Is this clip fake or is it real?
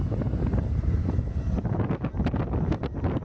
real